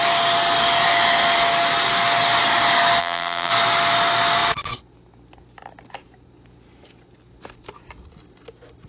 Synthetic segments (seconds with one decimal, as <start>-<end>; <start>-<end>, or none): 3.0-3.5